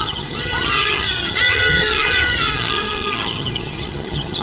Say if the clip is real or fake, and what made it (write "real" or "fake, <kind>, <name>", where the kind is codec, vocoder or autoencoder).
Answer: fake, vocoder, HiFi-GAN